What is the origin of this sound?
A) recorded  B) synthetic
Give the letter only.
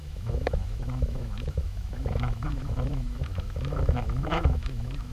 B